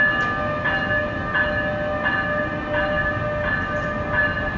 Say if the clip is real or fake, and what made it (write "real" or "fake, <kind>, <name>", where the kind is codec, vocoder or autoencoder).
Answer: real